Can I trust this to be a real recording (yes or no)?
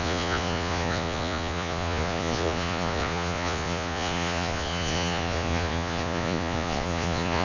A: no